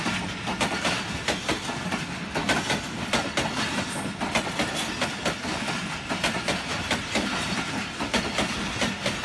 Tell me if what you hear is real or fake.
real